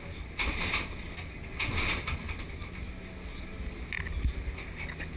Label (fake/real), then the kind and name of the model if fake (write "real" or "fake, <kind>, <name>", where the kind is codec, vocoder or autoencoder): real